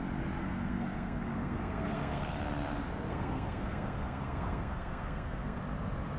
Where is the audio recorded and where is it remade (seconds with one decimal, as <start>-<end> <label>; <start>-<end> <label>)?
0.0-0.4 recorded; 0.4-2.4 remade; 2.4-3.1 recorded; 3.1-5.6 remade; 5.6-6.2 recorded